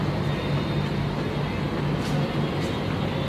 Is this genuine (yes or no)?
yes